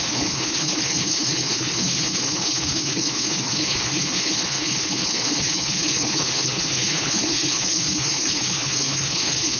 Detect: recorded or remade remade